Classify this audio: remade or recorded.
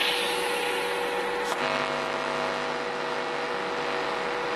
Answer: recorded